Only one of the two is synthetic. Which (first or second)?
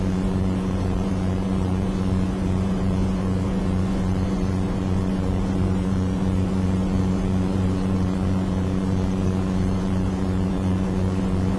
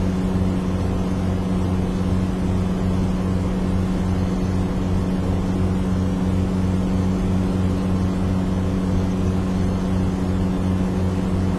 first